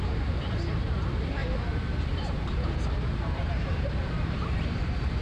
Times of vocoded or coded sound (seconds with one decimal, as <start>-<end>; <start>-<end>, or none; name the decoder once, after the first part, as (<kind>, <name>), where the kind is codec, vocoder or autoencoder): 0.0-5.2 (vocoder, BigVGAN v2)